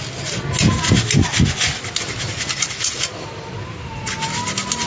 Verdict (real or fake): real